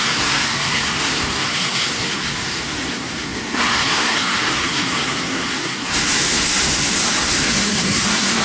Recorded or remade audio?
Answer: remade